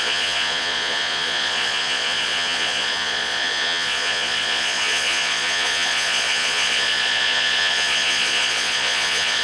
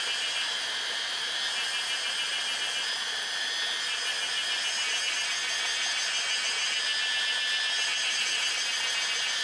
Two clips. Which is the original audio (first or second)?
second